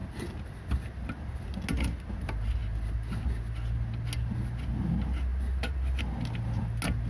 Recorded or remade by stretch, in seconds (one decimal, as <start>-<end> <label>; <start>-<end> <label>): 0.0-7.1 recorded